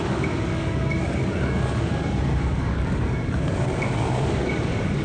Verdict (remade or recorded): remade